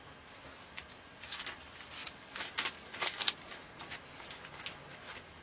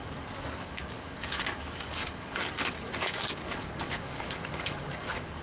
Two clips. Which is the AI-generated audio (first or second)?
second